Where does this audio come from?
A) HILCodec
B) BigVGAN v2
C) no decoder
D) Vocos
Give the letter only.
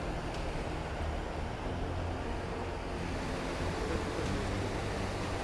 C